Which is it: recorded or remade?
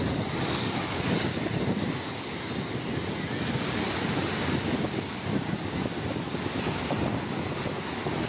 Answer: recorded